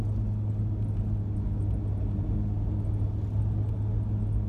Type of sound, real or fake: real